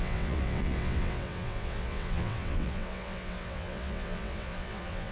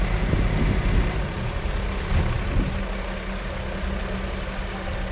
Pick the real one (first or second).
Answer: second